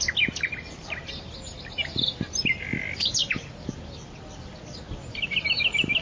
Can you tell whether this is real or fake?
real